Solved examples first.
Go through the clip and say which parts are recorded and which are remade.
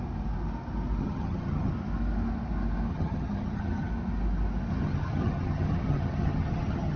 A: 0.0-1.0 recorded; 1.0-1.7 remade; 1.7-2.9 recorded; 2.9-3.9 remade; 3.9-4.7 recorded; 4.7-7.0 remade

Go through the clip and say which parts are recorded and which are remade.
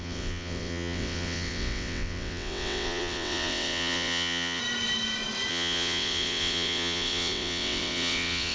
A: 0.0-4.6 remade; 4.6-5.5 recorded; 5.5-8.5 remade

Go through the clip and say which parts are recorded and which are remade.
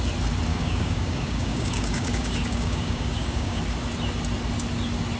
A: 0.0-0.5 recorded; 0.5-3.6 remade; 3.6-5.2 recorded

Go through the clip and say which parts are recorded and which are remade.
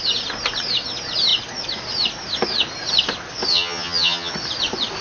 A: 0.0-3.5 recorded; 3.5-4.3 remade; 4.3-5.0 recorded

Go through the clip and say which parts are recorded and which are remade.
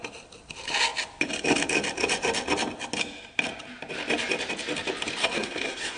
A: 0.0-5.2 recorded; 5.2-6.0 remade